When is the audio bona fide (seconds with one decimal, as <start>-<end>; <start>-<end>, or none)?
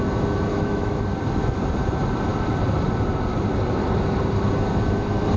0.0-0.5; 1.0-5.4